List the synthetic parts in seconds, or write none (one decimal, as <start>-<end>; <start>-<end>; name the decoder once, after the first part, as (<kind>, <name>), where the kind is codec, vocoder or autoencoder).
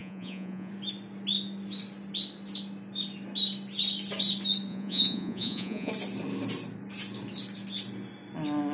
0.0-0.7 (vocoder, Vocos); 4.7-5.9